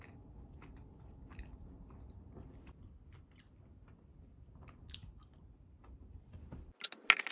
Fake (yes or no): no